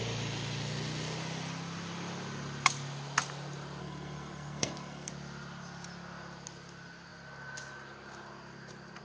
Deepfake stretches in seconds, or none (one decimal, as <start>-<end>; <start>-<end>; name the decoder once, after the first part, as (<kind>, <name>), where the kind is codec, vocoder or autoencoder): 3.8-5.1 (codec, SNAC)